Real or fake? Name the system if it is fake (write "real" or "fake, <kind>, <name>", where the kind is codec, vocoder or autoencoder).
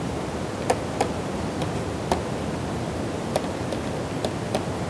real